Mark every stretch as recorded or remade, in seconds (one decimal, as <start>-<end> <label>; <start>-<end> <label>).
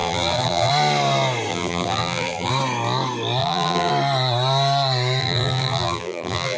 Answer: 0.0-0.7 remade; 0.7-1.5 recorded; 1.5-2.5 remade; 2.5-3.4 recorded; 3.4-3.9 remade; 3.9-5.2 recorded; 5.2-6.6 remade